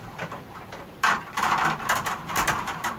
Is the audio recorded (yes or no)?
no